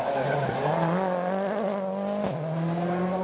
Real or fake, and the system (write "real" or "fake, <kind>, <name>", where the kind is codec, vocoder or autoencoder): real